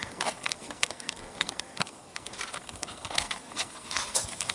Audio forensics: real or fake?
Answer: fake